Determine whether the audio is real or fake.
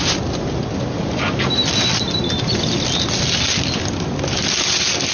real